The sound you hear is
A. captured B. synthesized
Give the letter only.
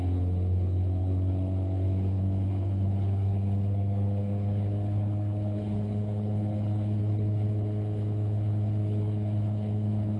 B